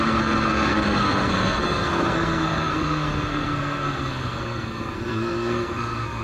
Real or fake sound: fake